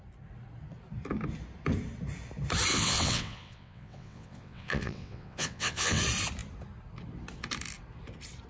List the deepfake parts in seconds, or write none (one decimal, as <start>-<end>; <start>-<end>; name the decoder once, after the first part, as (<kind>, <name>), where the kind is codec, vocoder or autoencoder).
2.7-6.0 (vocoder, WaveNeXt)